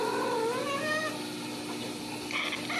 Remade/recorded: recorded